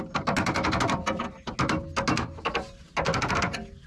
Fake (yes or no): no